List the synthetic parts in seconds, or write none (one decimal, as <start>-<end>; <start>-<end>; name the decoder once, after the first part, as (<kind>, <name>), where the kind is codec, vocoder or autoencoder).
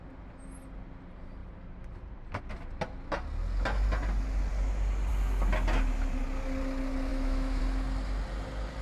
7.1-7.6 (autoencoder, DAC-VAE)